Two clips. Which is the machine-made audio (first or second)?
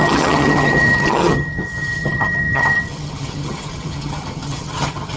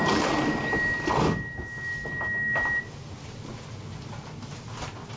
first